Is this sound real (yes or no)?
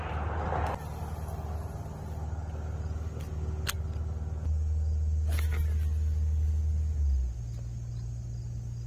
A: yes